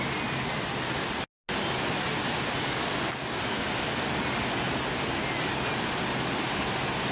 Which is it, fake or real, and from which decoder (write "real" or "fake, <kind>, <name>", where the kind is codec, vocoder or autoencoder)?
real